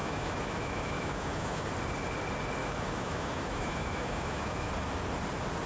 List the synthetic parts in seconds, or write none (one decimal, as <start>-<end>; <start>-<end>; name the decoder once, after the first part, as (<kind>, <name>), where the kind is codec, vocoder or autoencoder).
0.0-1.7 (autoencoder, DAC-VAE); 2.6-4.7